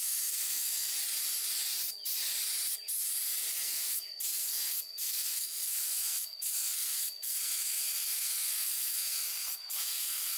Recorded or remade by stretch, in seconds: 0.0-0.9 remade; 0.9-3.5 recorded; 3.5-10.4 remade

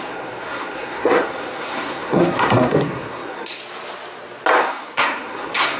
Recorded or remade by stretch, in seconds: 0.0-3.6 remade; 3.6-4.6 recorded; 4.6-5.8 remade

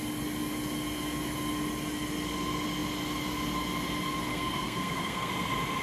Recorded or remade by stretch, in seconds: 0.0-4.3 recorded; 4.3-5.3 remade; 5.3-5.8 recorded

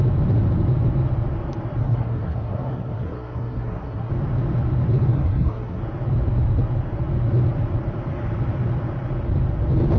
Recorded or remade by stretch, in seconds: 0.0-1.8 recorded; 1.8-4.1 remade; 4.1-5.1 recorded; 5.1-5.8 remade; 5.8-10.0 recorded

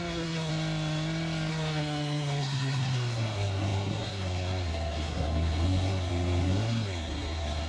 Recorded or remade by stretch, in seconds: 0.0-0.5 remade; 0.5-1.5 recorded; 1.5-7.7 remade